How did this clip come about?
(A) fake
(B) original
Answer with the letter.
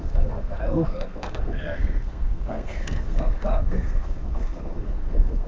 A